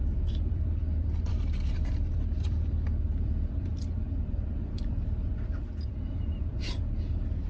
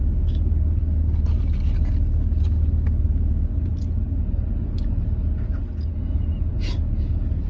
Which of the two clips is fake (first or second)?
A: first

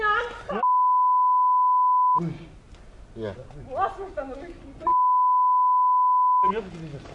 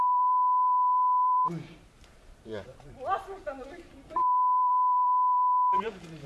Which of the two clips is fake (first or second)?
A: second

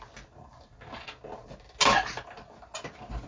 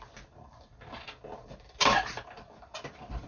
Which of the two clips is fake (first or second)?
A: second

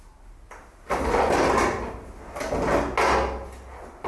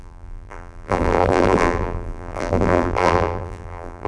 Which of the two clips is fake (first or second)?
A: second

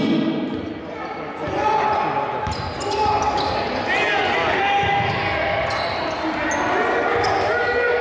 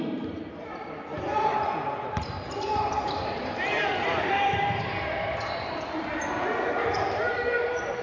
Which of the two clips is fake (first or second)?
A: second